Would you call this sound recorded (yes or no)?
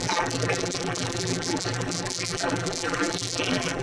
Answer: no